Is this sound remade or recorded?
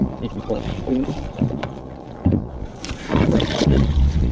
remade